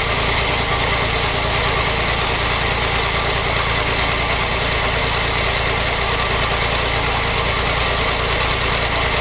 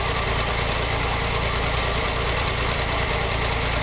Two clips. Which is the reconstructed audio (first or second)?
second